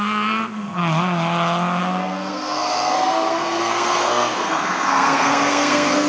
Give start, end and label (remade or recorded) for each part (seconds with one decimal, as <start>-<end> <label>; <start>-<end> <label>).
0.0-0.8 remade; 0.8-1.8 recorded; 1.8-6.1 remade